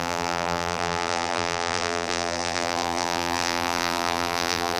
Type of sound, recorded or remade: remade